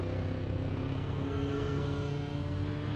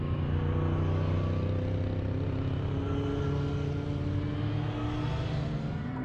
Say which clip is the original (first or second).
second